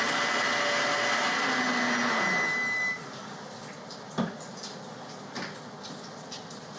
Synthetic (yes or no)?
no